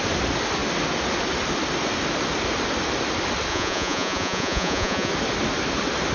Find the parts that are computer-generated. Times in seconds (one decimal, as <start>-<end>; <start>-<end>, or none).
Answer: 3.5-5.1